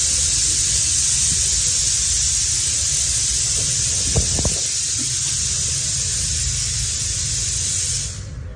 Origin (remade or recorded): recorded